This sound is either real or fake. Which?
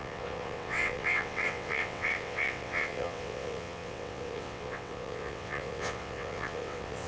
fake